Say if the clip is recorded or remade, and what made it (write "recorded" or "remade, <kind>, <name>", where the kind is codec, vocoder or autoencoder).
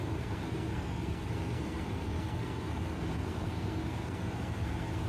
remade, codec, SNAC